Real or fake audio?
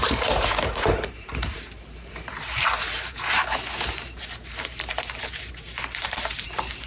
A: fake